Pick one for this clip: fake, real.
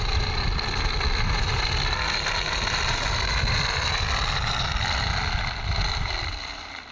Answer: real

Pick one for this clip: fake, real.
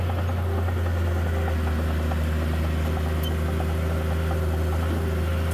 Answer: real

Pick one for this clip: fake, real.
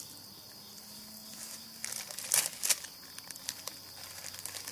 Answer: real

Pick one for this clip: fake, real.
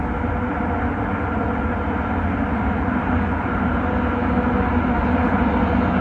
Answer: real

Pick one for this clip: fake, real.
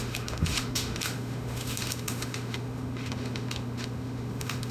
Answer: fake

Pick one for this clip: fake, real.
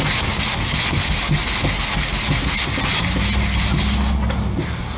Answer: real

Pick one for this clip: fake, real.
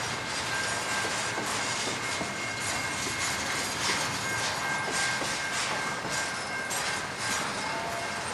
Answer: real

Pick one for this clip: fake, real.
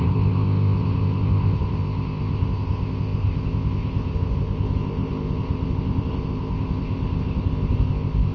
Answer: fake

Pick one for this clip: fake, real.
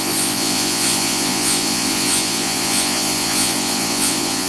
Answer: fake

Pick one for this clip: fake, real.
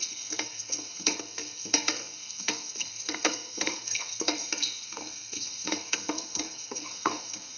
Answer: fake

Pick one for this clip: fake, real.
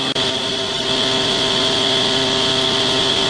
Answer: real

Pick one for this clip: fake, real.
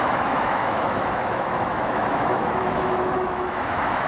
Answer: fake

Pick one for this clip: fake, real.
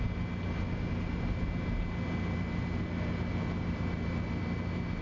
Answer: real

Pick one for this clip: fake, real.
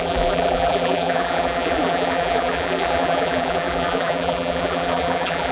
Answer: fake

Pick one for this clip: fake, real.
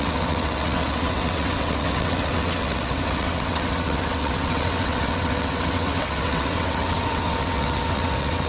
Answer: fake